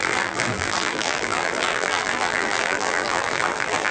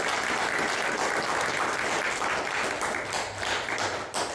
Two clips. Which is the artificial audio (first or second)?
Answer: first